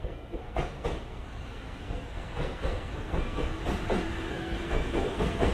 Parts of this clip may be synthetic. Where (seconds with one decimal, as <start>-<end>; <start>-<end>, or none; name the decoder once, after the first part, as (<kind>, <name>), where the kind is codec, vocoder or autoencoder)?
0.0-3.6 (codec, SNAC); 4.3-5.5